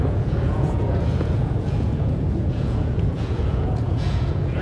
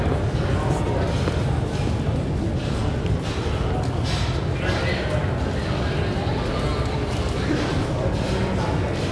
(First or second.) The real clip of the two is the second